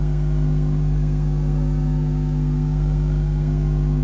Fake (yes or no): yes